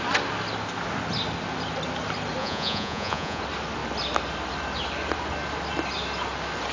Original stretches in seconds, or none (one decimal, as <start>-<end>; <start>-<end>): 0.0-2.4; 3.4-6.7